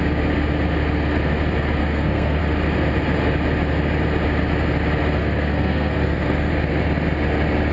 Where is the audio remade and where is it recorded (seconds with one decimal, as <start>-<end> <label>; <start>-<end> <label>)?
0.0-1.8 recorded; 1.8-2.4 remade; 2.4-5.2 recorded; 5.2-6.5 remade; 6.5-7.7 recorded